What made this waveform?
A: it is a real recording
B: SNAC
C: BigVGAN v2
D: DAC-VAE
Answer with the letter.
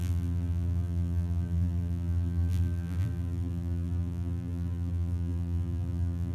C